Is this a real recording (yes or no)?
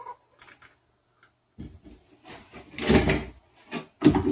yes